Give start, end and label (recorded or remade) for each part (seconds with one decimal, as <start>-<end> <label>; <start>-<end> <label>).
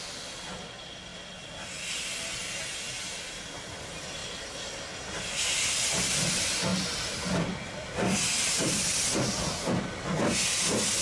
0.0-11.0 recorded